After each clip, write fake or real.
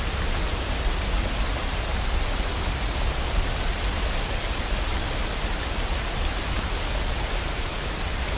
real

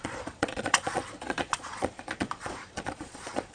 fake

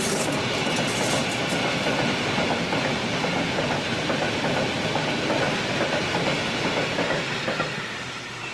real